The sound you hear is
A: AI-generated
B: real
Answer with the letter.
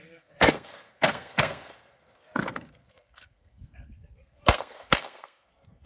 A